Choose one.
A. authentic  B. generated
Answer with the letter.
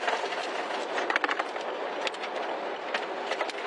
A